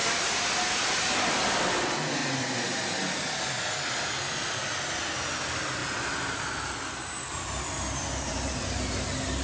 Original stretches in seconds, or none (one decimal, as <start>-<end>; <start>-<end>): 0.0-9.4